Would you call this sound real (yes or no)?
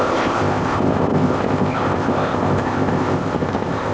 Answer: no